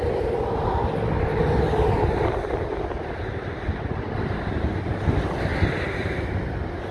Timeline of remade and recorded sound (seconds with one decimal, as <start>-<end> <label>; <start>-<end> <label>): 0.0-6.9 recorded